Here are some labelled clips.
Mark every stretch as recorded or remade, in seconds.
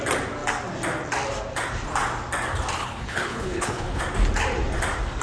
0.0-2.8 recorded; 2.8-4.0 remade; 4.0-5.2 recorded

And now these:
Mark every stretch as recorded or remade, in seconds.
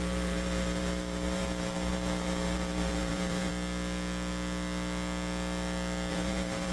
0.0-3.5 remade; 3.5-6.1 recorded; 6.1-6.7 remade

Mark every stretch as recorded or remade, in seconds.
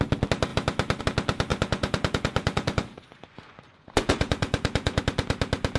0.0-1.5 recorded; 1.5-5.0 remade; 5.0-5.8 recorded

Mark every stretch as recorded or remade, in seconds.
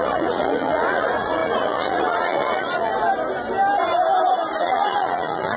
0.0-2.9 remade; 2.9-4.6 recorded; 4.6-5.6 remade